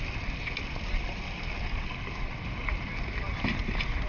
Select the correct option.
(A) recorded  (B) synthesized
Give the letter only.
A